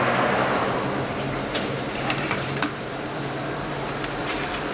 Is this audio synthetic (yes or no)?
yes